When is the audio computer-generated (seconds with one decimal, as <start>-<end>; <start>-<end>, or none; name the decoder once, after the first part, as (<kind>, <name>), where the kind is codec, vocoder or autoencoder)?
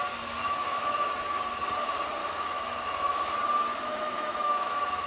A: 0.4-1.1 (autoencoder, DAC-VAE); 2.2-3.3; 3.7-5.1